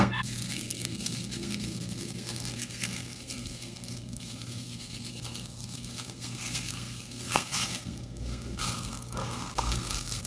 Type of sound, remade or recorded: remade